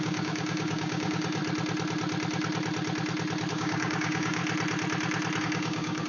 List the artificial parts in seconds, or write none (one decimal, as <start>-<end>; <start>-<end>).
0.0-1.4; 3.5-4.4; 5.4-6.1